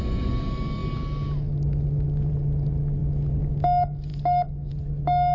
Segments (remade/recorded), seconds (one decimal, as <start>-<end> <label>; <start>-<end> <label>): 0.0-5.3 recorded